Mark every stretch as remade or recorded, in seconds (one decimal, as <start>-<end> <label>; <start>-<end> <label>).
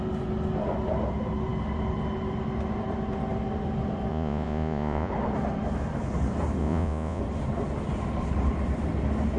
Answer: 0.0-4.1 recorded; 4.1-5.1 remade; 5.1-6.6 recorded; 6.6-7.2 remade; 7.2-9.4 recorded